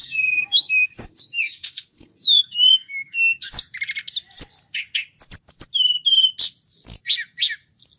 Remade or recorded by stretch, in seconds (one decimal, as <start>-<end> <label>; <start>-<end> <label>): 0.0-3.5 remade; 3.5-8.0 recorded